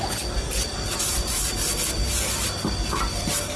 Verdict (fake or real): real